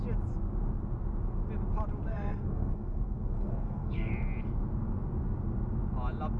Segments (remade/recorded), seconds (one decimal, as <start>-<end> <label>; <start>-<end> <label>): 0.0-2.1 recorded; 2.1-4.1 remade; 4.1-6.4 recorded